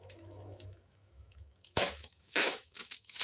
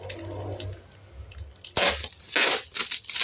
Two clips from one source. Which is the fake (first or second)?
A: first